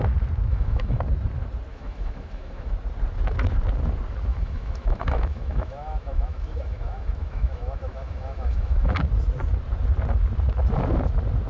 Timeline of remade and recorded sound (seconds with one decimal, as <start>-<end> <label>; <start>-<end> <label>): 0.0-0.5 recorded; 0.5-1.0 remade; 1.0-1.7 recorded; 1.7-2.7 remade; 2.7-4.3 recorded; 4.3-8.9 remade; 8.9-11.5 recorded